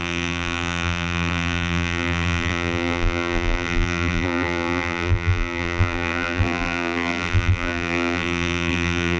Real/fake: fake